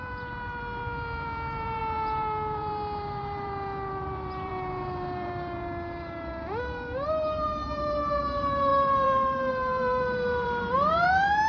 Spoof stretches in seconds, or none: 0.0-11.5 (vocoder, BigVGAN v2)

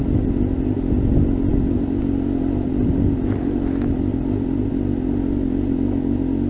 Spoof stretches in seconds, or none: none

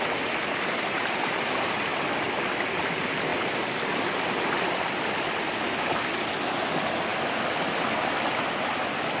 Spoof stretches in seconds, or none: 1.9-2.9 (vocoder, BigVGAN v2); 3.3-4.0; 7.1-8.1

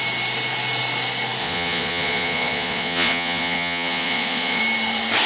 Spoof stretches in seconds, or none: 1.4-4.6 (vocoder, Vocos)

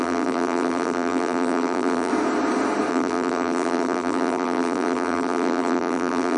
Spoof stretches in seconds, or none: 0.0-2.1 (vocoder, BigVGAN v2); 2.9-6.4

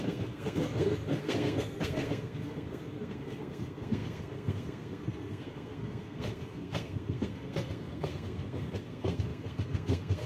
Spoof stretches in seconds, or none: 0.0-10.3 (codec, SNAC)

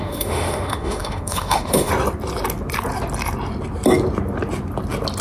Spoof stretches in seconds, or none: 0.0-1.9 (autoencoder, DAC-VAE)

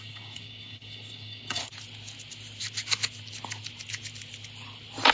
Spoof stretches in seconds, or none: 0.0-1.6 (codec, DAC)